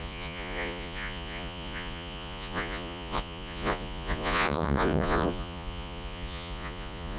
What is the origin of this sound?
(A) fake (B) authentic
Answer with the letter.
A